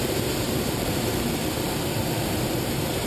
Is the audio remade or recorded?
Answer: remade